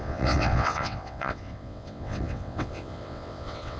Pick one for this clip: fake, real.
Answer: fake